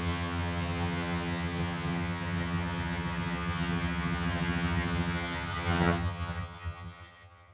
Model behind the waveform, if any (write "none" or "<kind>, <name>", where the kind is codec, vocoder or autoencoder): vocoder, HiFi-GAN